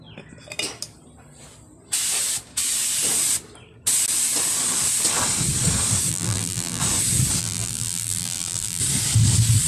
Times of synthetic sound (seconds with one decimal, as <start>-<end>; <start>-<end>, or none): 6.1-6.8; 7.4-8.8